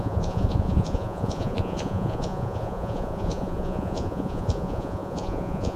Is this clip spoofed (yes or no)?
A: yes